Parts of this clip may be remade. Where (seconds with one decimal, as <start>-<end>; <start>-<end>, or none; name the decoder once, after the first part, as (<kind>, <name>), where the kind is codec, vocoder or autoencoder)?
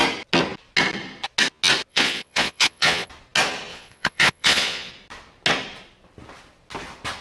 1.9-3.1 (vocoder, Vocos); 3.7-4.9